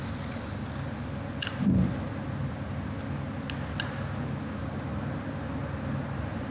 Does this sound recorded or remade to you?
recorded